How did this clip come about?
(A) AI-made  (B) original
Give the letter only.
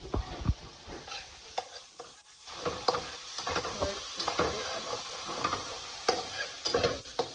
A